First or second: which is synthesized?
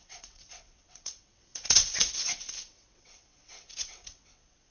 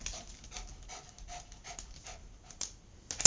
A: first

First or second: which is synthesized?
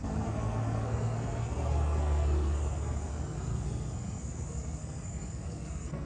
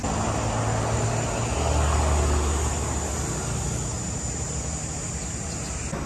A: first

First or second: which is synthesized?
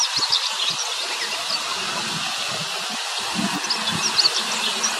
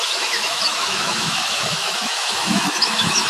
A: second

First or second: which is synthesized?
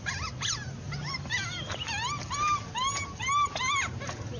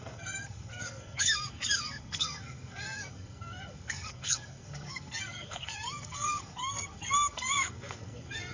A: second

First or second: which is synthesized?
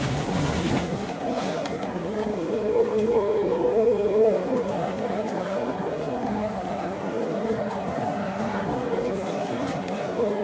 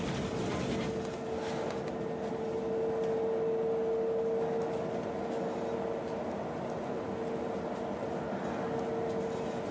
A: first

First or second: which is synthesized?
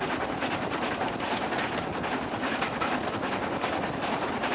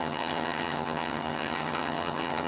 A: second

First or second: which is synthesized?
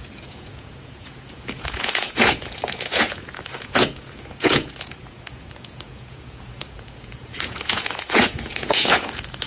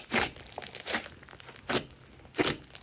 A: first